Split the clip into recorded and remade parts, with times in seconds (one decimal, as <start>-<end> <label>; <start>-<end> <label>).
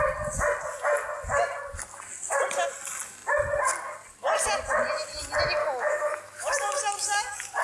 0.0-5.6 recorded; 5.6-6.8 remade; 6.8-7.6 recorded